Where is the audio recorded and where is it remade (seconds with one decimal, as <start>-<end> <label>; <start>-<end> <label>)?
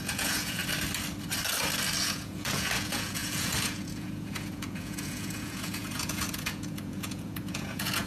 0.0-0.6 remade; 0.6-2.0 recorded; 2.0-8.1 remade